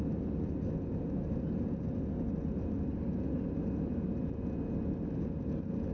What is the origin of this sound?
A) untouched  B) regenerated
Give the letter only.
A